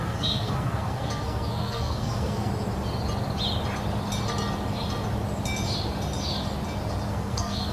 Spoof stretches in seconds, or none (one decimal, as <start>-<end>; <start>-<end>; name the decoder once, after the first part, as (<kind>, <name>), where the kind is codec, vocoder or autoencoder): 0.0-2.5 (codec, SNAC); 7.1-7.7